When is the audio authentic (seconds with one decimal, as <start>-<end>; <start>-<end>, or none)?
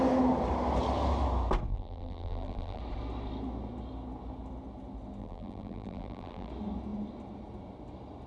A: 0.0-1.7; 2.8-5.2; 6.5-8.3